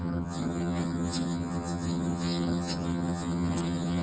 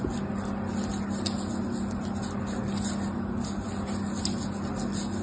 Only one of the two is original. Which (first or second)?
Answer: second